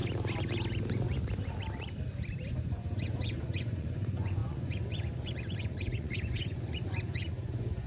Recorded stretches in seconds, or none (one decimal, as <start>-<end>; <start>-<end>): 0.0-2.5